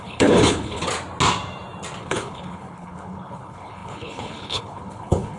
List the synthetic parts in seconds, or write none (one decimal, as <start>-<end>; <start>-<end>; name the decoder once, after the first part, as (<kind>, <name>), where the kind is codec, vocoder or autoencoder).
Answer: 0.0-0.8 (codec, HILCodec); 2.0-5.4